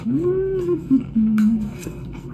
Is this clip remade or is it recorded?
remade